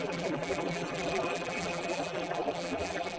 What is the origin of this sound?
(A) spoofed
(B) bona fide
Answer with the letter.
A